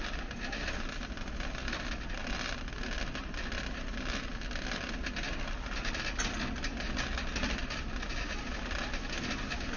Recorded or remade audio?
recorded